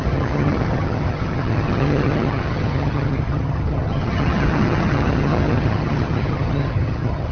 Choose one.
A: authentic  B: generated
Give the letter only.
B